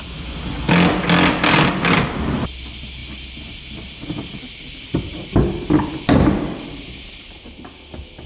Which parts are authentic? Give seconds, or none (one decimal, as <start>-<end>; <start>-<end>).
0.0-8.3